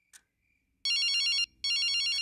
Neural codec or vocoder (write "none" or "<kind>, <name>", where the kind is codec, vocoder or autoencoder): none